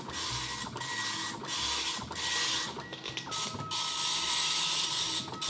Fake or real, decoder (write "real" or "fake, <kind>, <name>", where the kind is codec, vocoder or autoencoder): real